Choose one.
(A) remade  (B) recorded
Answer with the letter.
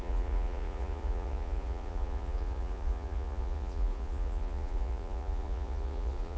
A